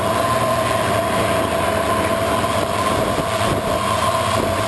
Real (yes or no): yes